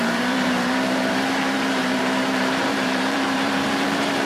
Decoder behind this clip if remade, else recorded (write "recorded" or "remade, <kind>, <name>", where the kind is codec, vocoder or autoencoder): remade, vocoder, BigVGAN v2